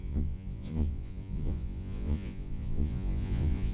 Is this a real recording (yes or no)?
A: no